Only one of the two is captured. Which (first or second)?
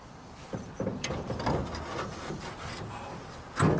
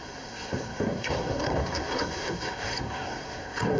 first